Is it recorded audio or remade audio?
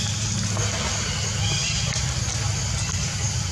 recorded